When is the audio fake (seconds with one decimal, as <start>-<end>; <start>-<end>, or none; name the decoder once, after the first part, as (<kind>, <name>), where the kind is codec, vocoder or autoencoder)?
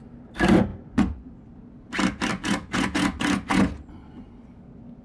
0.7-1.3 (vocoder, Vocos); 2.3-4.2